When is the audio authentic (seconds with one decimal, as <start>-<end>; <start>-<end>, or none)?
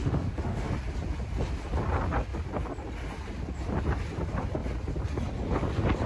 0.7-6.1